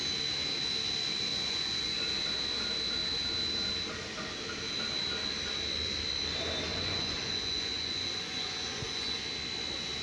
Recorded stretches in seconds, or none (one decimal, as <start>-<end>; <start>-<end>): 0.0-1.3; 2.0-6.7; 9.2-10.0